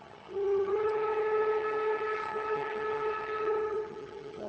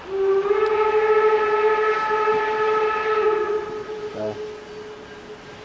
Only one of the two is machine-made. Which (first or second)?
first